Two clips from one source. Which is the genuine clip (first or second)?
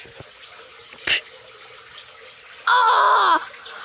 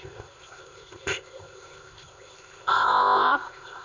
first